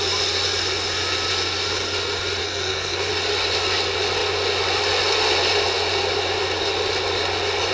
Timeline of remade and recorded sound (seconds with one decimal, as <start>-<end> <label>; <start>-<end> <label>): 0.0-2.4 recorded; 2.4-3.1 remade; 3.1-7.7 recorded